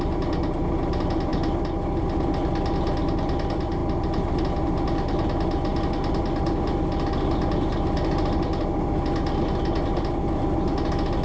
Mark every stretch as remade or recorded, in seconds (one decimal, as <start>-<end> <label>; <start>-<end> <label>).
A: 0.0-11.2 recorded